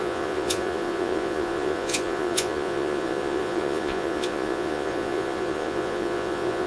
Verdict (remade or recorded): remade